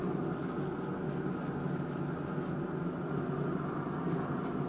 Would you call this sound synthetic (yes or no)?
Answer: no